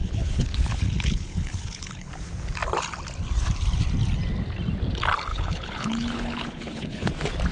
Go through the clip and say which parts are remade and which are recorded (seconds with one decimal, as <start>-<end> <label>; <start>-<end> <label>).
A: 0.0-2.1 remade; 2.1-5.3 recorded; 5.3-7.1 remade; 7.1-7.5 recorded

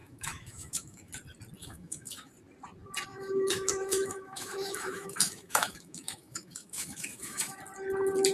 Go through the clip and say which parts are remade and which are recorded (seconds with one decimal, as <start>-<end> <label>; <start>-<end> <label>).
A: 0.0-1.1 remade; 1.1-1.6 recorded; 1.6-2.3 remade; 2.3-3.1 recorded; 3.1-7.6 remade; 7.6-8.3 recorded

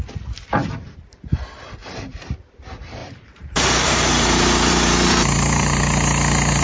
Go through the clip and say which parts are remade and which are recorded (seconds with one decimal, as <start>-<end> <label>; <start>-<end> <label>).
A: 0.0-0.6 recorded; 0.6-1.1 remade; 1.1-1.8 recorded; 1.8-2.5 remade; 2.5-3.0 recorded; 3.0-5.8 remade; 5.8-6.6 recorded